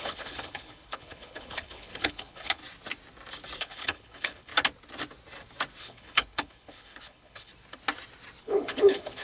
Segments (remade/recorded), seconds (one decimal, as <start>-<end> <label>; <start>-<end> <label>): 0.0-2.6 remade; 2.6-3.6 recorded; 3.6-4.5 remade; 4.5-5.8 recorded; 5.8-7.5 remade; 7.5-8.4 recorded; 8.4-9.2 remade